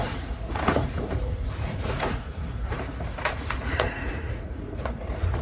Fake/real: fake